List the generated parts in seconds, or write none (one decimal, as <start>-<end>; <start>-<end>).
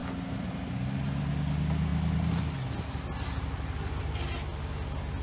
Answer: none